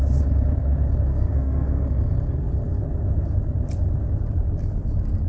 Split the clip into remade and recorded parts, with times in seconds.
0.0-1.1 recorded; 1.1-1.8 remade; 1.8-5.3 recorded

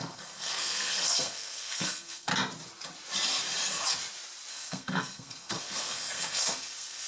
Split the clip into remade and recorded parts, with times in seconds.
0.0-2.3 remade; 2.3-4.5 recorded; 4.5-7.1 remade

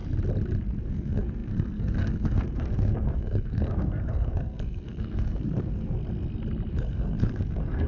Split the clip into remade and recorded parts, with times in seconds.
0.0-0.8 recorded; 0.8-6.0 remade; 6.0-6.7 recorded; 6.7-7.9 remade

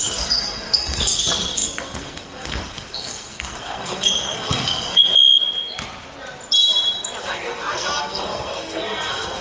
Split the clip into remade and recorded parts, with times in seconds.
0.0-5.1 remade; 5.1-7.2 recorded; 7.2-9.4 remade

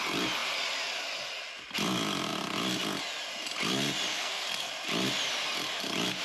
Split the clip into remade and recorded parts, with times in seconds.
0.0-4.1 recorded; 4.1-4.7 remade; 4.7-6.2 recorded

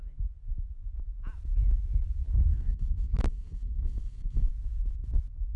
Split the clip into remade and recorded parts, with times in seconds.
0.0-2.5 recorded; 2.5-4.5 remade; 4.5-5.6 recorded

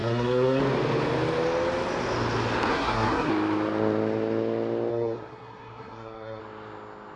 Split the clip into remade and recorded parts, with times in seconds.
0.0-0.6 remade; 0.6-2.7 recorded; 2.7-3.3 remade; 3.3-4.9 recorded; 4.9-6.4 remade; 6.4-7.2 recorded